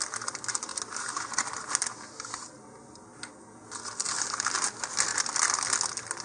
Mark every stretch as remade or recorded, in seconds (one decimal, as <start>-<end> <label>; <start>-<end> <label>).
0.0-6.2 recorded